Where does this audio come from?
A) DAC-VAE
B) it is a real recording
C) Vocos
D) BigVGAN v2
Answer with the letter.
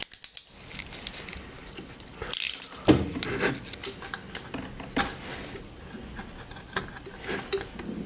B